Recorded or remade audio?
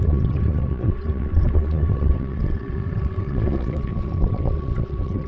remade